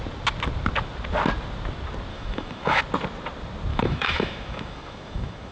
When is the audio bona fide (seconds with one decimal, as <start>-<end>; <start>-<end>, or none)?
0.0-2.1; 2.8-3.7